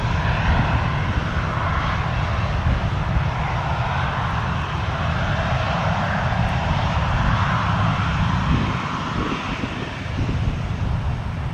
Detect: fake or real real